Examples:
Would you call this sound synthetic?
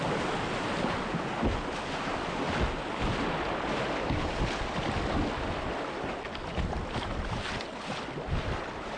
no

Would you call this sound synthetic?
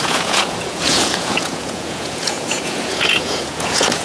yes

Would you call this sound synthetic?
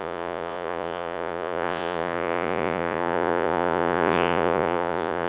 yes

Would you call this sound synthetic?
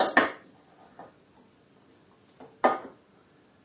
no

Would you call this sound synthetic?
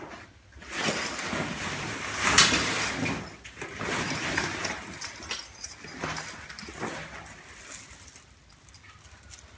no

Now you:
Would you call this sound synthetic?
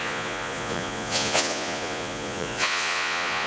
yes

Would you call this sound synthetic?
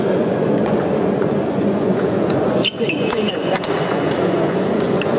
yes